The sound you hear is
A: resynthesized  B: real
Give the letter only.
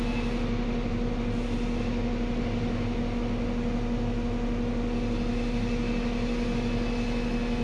B